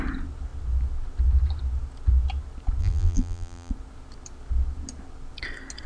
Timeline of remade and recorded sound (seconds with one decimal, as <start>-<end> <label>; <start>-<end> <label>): 0.0-2.8 recorded; 2.8-3.7 remade; 3.7-5.9 recorded